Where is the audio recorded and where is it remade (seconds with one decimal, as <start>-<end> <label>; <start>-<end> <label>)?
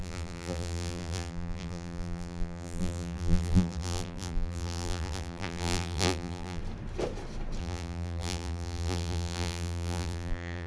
0.0-6.6 remade; 6.6-7.6 recorded; 7.6-10.7 remade